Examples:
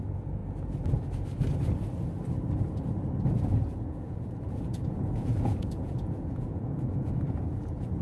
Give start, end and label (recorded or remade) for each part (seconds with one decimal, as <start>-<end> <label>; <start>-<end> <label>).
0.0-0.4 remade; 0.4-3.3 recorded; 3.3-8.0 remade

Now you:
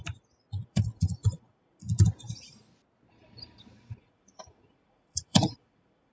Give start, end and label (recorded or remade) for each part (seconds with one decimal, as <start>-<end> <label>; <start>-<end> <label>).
0.0-0.5 recorded; 0.5-1.8 remade; 1.8-4.0 recorded; 4.0-6.1 remade

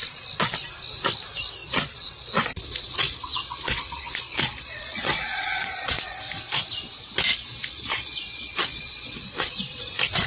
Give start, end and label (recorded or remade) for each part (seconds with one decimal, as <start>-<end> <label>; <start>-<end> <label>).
0.0-1.6 recorded; 1.6-6.2 remade; 6.2-7.3 recorded; 7.3-9.8 remade; 9.8-10.3 recorded

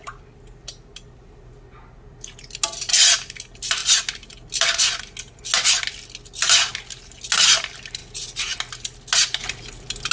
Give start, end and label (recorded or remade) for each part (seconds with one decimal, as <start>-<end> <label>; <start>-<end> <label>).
0.0-10.1 recorded